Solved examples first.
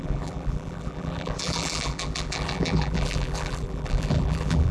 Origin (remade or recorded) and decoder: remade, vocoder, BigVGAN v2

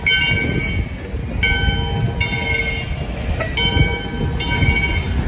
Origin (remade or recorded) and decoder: recorded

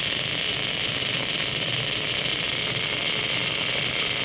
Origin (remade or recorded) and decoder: recorded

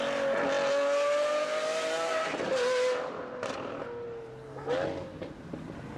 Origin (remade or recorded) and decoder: recorded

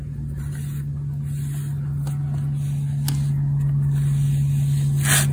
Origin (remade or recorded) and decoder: recorded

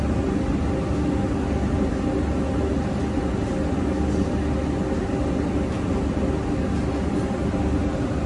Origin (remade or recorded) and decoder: recorded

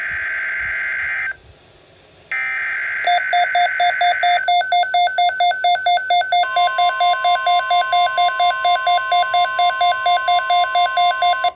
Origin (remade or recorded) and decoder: recorded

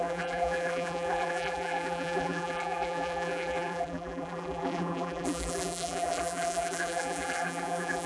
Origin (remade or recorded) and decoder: remade, vocoder, BigVGAN v2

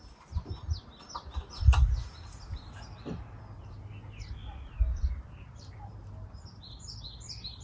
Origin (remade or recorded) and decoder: recorded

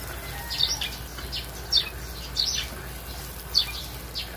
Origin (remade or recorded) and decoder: recorded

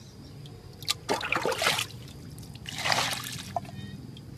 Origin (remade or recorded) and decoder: recorded